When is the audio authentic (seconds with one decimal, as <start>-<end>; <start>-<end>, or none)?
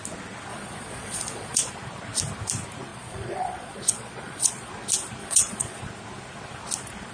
0.0-0.5; 1.7-2.9; 4.7-5.2; 5.8-7.1